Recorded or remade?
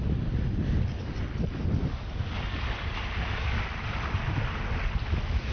recorded